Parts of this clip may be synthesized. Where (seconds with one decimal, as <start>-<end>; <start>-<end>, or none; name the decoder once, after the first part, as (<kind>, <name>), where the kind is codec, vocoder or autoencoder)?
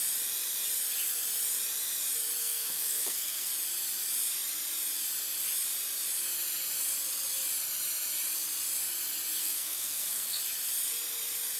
2.4-3.5 (codec, SNAC); 9.4-10.4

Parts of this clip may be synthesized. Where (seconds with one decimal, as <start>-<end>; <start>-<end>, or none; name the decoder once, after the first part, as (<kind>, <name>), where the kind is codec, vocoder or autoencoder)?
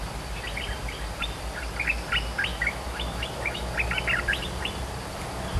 2.5-3.7 (autoencoder, DAC-VAE)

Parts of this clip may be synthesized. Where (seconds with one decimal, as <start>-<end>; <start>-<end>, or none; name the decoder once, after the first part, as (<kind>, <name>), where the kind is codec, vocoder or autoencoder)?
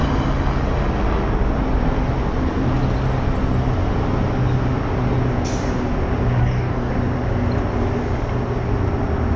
6.4-6.9 (codec, DAC)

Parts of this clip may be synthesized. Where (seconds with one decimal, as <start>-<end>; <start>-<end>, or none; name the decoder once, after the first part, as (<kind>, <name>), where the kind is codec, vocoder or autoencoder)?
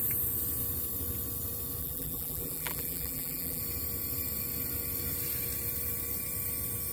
1.8-3.6 (vocoder, BigVGAN v2)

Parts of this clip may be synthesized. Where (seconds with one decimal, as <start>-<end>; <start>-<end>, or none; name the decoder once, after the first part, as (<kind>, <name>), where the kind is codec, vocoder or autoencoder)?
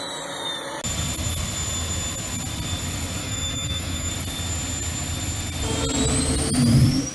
3.2-4.1 (autoencoder, DAC-VAE)